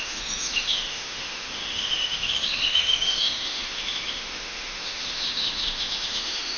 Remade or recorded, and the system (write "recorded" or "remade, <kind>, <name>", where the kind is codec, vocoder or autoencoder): remade, autoencoder, DAC-VAE